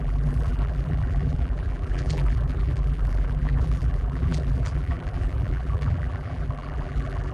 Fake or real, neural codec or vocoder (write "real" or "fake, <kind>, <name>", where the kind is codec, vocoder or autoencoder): fake, vocoder, BigVGAN v2